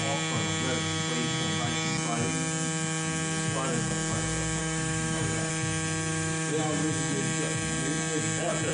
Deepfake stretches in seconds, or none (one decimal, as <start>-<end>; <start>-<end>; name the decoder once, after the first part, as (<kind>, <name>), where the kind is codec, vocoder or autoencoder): 4.6-5.5 (autoencoder, DAC-VAE); 6.1-6.9